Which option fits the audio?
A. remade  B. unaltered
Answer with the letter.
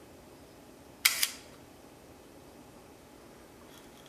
A